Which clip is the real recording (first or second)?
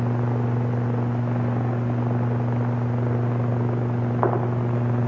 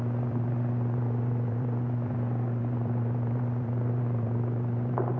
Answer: first